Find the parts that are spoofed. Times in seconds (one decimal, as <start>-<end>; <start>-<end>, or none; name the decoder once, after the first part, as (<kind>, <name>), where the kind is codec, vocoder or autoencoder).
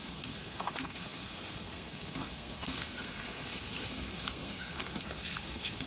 0.0-5.9 (codec, SNAC)